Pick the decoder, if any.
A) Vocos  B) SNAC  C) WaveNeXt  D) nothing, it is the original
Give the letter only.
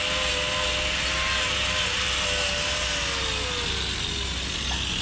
D